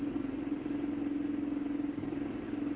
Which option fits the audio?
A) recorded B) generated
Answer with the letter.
A